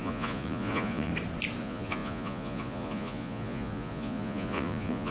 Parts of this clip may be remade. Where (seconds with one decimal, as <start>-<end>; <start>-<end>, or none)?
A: 0.0-1.1; 1.6-5.1

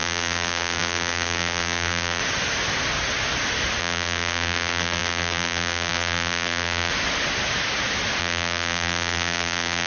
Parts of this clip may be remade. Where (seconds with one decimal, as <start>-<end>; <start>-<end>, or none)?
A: 0.0-2.2; 3.8-6.9; 8.2-9.9

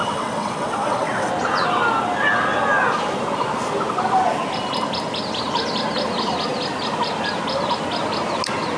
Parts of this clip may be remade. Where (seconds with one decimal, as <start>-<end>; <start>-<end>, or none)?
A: 0.0-1.3

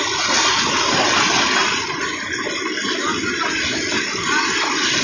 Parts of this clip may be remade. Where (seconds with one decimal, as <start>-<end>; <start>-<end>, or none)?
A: none

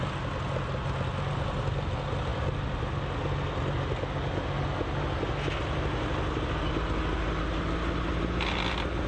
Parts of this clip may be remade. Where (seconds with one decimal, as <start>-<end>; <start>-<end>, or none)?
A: none

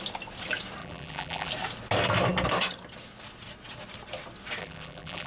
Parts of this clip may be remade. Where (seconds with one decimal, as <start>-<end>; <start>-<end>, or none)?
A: 0.8-1.5; 4.6-5.3

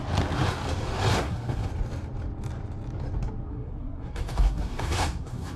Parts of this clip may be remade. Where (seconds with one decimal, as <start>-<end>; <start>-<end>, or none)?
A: 1.1-1.7; 3.5-5.6